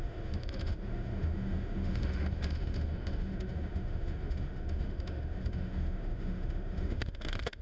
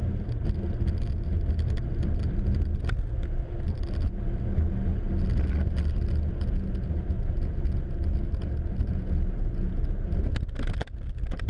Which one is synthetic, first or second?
first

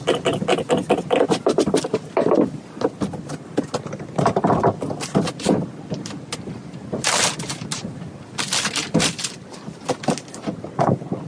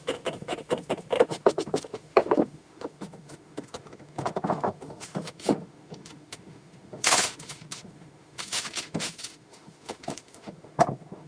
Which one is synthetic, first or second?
second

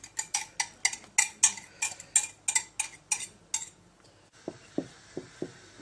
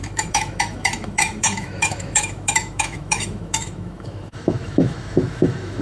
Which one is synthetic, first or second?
second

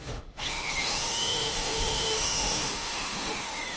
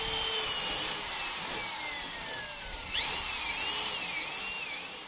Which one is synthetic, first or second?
first